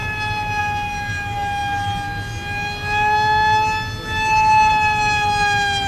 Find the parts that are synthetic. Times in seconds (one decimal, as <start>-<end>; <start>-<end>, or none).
none